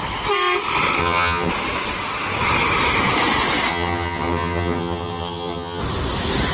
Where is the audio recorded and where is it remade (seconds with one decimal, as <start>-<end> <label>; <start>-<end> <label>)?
0.0-1.0 recorded; 1.0-1.5 remade; 1.5-3.7 recorded; 3.7-5.8 remade; 5.8-6.5 recorded